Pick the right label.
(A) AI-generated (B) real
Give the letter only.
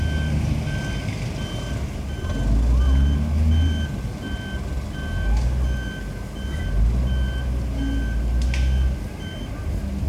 B